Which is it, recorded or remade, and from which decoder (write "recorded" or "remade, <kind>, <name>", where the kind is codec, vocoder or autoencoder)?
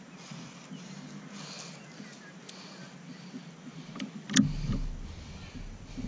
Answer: recorded